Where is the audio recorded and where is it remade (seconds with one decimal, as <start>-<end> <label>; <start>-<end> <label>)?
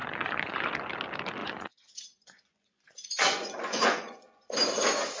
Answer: 0.0-0.7 remade; 0.7-1.4 recorded; 1.4-4.5 remade; 4.5-5.2 recorded